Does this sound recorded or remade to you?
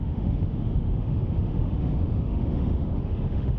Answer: remade